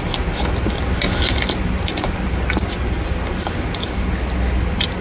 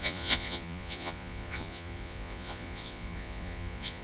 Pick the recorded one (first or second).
first